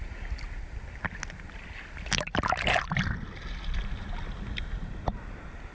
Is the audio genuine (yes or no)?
yes